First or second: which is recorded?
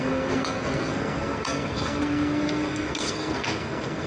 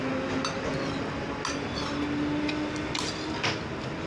second